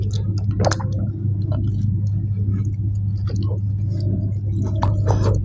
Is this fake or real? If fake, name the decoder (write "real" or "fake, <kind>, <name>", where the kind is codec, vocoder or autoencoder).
real